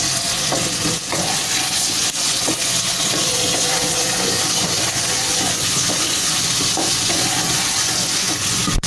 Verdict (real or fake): fake